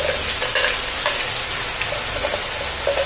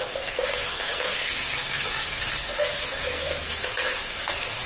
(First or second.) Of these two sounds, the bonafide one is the first